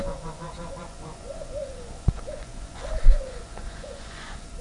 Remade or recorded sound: remade